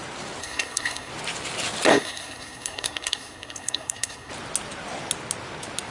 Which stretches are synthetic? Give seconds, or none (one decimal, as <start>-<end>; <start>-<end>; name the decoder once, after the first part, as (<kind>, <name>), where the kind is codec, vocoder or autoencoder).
0.4-1.1 (codec, SNAC); 1.9-4.3